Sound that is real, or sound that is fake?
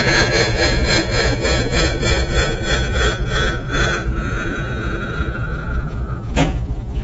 fake